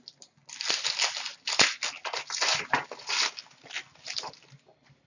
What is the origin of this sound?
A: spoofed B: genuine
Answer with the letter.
B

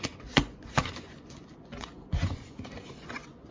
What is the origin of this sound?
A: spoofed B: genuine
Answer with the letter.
A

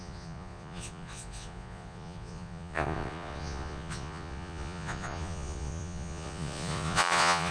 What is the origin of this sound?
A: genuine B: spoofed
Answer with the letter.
B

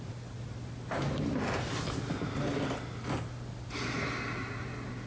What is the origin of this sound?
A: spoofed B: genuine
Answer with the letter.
B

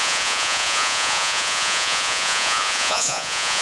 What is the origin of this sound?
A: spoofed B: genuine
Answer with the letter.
A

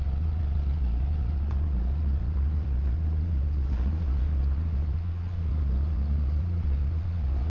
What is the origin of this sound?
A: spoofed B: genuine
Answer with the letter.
A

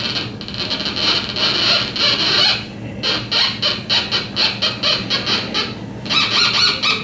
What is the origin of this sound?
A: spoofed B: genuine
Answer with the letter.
B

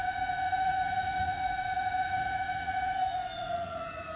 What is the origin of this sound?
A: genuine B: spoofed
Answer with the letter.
B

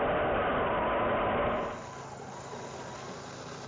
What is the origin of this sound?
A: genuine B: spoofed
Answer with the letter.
A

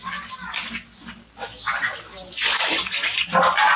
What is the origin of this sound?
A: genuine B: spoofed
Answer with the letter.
A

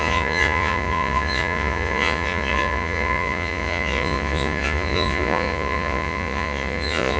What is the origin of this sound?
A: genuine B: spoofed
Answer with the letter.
B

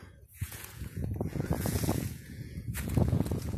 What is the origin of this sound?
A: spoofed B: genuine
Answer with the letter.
A